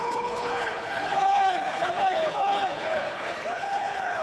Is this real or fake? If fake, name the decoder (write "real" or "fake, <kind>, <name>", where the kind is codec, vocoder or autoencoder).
fake, codec, HILCodec